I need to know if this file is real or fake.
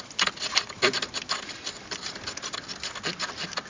real